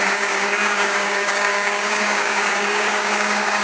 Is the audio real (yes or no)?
no